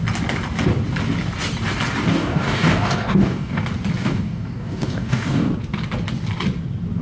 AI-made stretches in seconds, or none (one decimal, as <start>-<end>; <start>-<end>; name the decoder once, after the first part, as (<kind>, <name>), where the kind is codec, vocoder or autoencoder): 2.1-3.6 (codec, DAC); 4.0-5.5